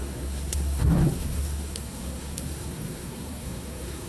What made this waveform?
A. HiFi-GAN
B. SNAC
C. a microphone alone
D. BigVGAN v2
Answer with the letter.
B